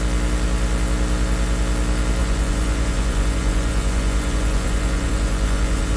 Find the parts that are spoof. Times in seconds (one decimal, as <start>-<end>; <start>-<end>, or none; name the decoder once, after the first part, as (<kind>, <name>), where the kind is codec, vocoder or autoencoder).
2.2-6.0 (vocoder, Vocos)